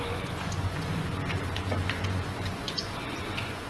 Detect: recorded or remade remade